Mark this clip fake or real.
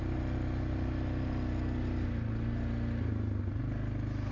real